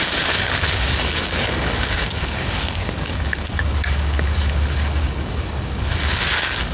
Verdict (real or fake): fake